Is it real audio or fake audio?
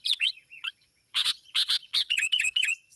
fake